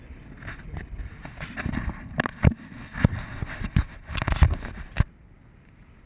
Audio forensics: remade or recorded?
recorded